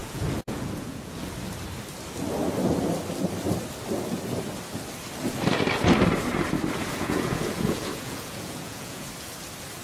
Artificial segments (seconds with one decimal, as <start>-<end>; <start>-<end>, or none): 0.0-1.3; 6.9-9.1